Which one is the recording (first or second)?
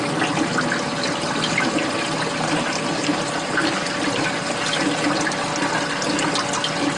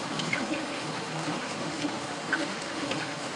first